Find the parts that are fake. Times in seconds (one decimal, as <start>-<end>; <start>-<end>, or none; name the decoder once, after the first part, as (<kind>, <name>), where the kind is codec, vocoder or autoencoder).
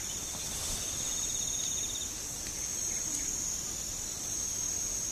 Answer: 2.7-3.5 (vocoder, BigVGAN v2)